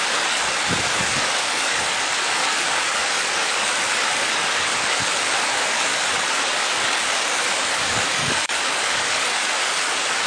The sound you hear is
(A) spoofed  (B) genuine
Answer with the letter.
A